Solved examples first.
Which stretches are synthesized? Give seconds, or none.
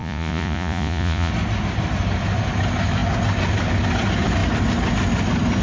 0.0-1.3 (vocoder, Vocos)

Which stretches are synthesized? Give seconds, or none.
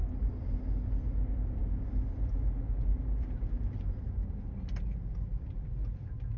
none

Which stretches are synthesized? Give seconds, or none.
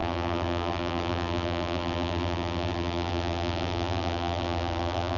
0.0-5.2 (vocoder, BigVGAN v2)